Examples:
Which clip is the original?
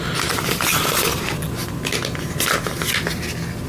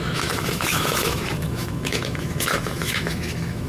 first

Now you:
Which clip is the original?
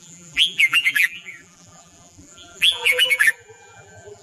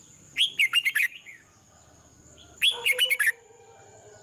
second